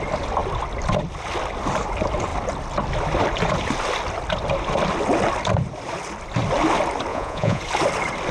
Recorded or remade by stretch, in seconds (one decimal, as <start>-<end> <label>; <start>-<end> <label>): 0.0-7.1 recorded; 7.1-7.6 remade; 7.6-8.3 recorded